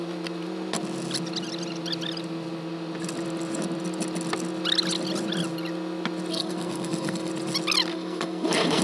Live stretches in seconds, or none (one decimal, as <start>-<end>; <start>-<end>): 0.0-6.3; 7.3-7.9